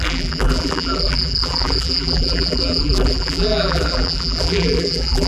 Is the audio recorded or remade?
remade